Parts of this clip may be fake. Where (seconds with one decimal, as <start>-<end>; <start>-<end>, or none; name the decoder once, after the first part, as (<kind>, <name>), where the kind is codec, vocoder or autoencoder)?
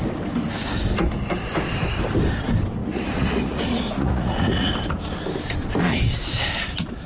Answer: 2.8-4.7 (vocoder, Vocos)